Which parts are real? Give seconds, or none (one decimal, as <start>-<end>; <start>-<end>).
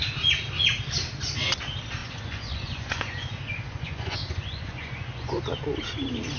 0.0-2.0; 5.4-6.4